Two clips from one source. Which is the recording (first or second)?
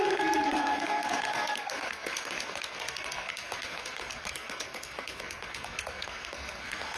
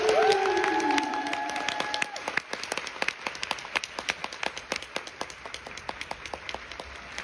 second